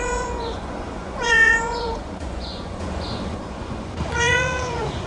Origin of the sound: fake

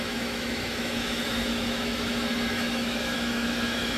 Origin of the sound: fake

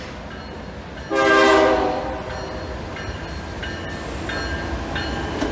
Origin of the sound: real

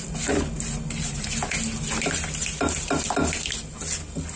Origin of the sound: real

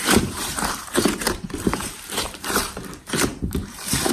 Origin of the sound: fake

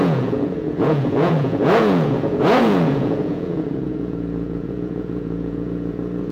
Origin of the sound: fake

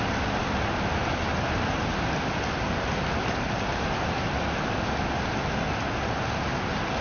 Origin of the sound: real